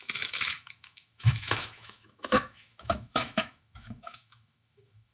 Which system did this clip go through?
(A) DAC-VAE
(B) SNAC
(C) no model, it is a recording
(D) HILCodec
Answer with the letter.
A